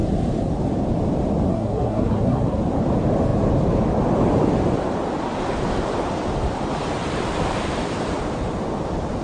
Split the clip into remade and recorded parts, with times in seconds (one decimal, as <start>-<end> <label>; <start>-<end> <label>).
0.0-1.5 recorded; 1.5-2.6 remade; 2.6-9.2 recorded